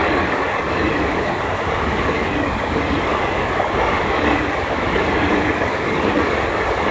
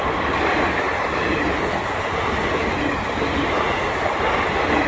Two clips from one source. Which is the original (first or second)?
second